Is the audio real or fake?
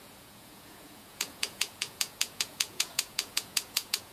fake